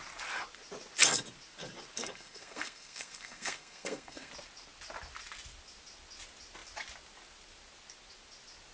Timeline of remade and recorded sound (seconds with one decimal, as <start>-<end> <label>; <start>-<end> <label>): 0.0-2.0 recorded; 2.0-4.3 remade; 4.3-8.7 recorded